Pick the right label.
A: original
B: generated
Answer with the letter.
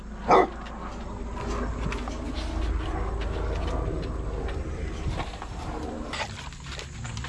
A